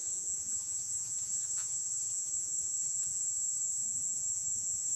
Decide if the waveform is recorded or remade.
remade